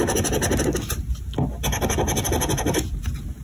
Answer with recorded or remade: recorded